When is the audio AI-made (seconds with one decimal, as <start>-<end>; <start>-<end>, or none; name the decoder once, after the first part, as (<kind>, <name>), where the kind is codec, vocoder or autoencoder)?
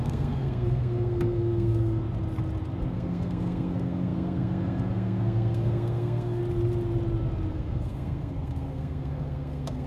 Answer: 0.0-2.0 (codec, SNAC); 2.8-6.4; 7.5-9.9